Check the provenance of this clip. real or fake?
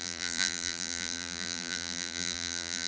fake